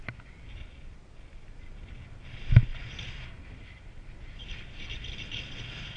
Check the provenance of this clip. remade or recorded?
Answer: recorded